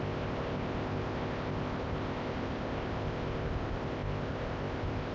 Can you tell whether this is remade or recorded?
remade